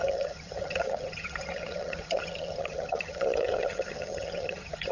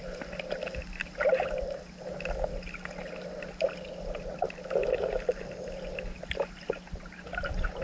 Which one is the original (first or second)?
second